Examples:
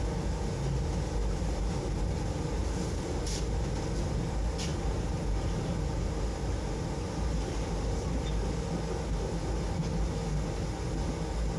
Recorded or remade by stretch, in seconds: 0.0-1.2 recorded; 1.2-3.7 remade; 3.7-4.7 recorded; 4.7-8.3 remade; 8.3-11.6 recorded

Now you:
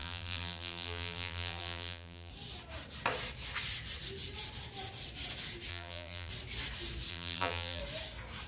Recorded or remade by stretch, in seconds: 0.0-2.3 remade; 2.3-5.7 recorded; 5.7-6.3 remade; 6.3-7.1 recorded; 7.1-7.8 remade; 7.8-8.5 recorded

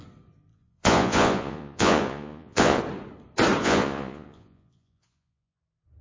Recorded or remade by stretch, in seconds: 0.0-0.5 recorded; 0.5-2.8 remade; 2.8-3.6 recorded; 3.6-5.6 remade; 5.6-6.0 recorded

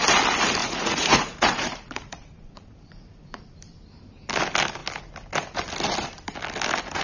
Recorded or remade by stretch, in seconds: 0.0-0.6 recorded; 0.6-3.4 remade; 3.4-7.0 recorded